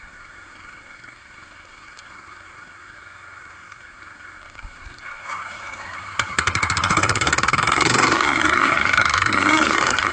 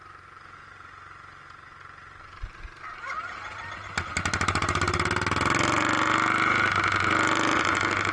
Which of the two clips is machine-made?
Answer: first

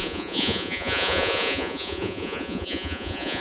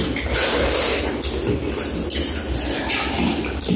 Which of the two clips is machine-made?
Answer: first